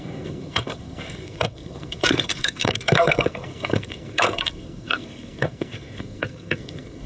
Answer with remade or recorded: remade